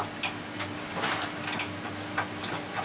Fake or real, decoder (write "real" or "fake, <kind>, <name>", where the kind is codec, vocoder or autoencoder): real